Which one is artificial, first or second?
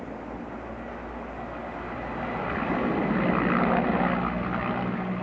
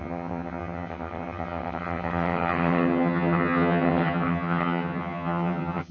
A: second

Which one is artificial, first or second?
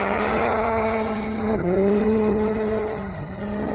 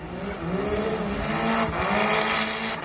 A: first